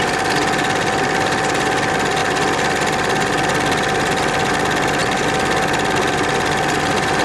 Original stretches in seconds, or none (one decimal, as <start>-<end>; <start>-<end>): 0.0-7.2